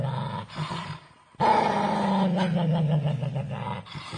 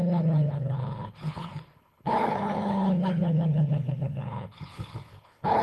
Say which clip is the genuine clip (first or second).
first